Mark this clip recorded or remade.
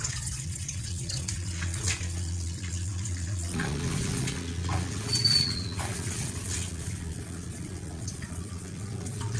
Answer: remade